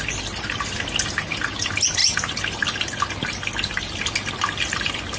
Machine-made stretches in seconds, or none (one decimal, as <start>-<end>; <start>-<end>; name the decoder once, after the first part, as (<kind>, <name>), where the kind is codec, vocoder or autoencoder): none